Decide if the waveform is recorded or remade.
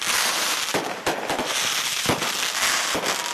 recorded